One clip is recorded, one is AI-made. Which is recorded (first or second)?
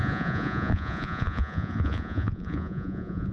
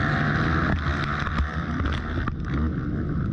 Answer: second